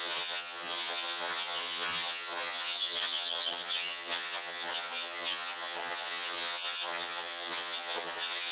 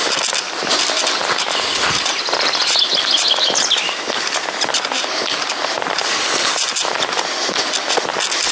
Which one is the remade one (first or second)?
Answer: first